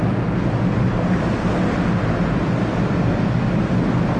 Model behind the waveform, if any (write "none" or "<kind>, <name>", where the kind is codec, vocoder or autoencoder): none